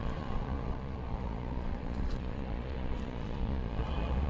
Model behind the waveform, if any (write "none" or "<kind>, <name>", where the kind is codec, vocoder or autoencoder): vocoder, Vocos